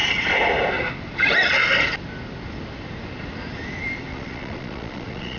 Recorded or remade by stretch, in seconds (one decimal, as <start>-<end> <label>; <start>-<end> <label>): 0.0-4.1 recorded; 4.1-5.4 remade